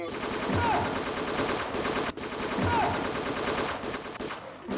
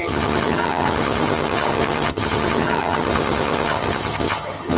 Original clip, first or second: first